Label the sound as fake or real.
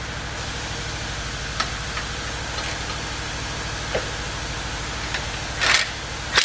real